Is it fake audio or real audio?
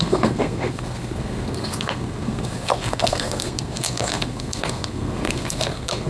fake